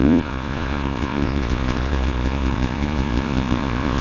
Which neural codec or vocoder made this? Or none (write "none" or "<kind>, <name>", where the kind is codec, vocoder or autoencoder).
vocoder, Vocos